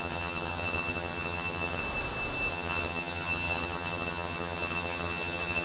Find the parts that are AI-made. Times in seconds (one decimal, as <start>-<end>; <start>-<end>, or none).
0.0-1.8; 2.5-5.6